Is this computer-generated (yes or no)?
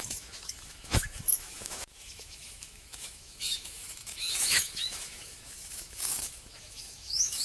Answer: yes